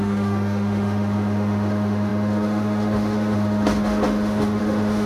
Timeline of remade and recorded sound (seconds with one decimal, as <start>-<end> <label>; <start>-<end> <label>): 0.0-5.1 remade